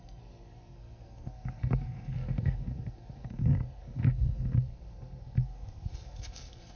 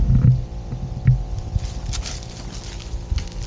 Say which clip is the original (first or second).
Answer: second